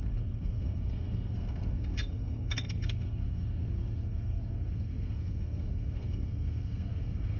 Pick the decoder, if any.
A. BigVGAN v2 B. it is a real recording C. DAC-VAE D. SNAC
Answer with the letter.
D